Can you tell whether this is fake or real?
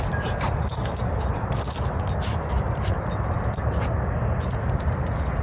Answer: real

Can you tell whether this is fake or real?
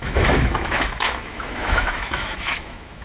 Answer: fake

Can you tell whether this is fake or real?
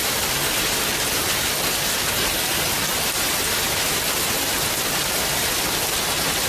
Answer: real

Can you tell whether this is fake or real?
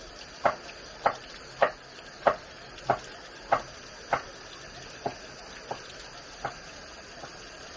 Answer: real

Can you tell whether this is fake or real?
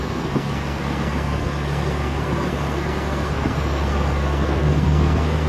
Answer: fake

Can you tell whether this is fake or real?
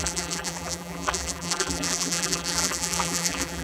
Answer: fake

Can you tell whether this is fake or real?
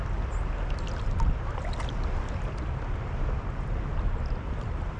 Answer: real